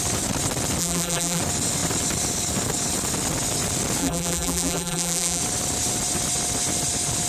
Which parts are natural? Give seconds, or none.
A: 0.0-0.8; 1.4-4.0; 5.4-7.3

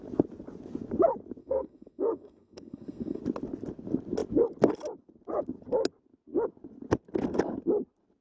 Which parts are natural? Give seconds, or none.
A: 0.0-1.4; 3.2-8.2

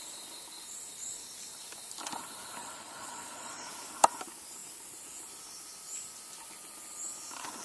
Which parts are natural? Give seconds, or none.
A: 0.0-2.6; 3.7-7.6

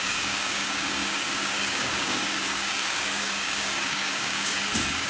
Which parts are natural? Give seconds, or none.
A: none

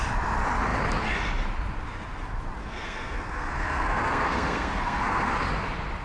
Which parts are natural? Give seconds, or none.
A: 0.0-2.6; 5.3-6.0

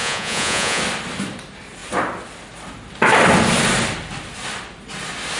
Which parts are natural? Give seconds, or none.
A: 0.8-5.4

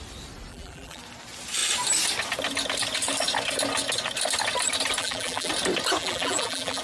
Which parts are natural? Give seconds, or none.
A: 0.0-0.5; 1.0-5.0; 5.5-6.0